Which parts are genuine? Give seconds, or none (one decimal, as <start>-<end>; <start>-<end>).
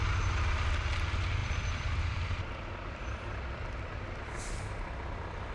0.0-1.4; 4.7-5.5